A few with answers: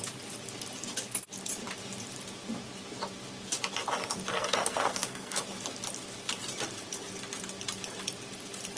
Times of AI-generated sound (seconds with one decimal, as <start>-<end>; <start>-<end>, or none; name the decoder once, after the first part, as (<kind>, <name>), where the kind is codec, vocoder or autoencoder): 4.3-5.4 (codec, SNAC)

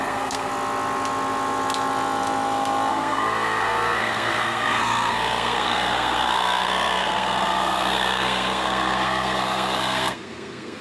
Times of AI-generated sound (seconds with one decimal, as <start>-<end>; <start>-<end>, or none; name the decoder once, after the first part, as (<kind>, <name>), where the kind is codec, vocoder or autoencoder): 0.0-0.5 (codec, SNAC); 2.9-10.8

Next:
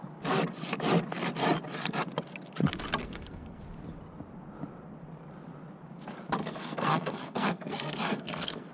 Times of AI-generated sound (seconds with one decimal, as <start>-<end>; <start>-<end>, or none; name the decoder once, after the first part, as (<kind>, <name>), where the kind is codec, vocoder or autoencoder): 3.0-3.6 (codec, SNAC); 6.4-8.7

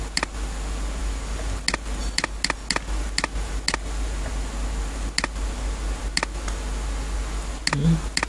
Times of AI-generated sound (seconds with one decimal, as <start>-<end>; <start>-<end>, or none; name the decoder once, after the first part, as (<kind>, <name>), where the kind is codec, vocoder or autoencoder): none

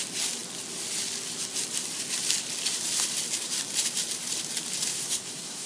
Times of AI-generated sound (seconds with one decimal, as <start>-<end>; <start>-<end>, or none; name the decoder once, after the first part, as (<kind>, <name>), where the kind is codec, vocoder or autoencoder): 4.9-5.7 (codec, SNAC)

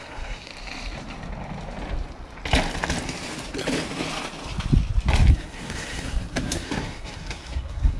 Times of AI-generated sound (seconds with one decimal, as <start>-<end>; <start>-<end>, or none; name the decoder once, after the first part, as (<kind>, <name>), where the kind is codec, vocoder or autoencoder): 0.0-0.5 (codec, SNAC); 5.3-8.0

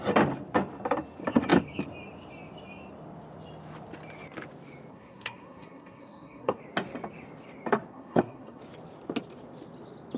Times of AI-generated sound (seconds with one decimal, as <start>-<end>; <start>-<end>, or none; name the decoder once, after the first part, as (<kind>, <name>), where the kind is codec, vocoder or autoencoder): 4.9-6.6 (codec, SNAC); 7.9-8.6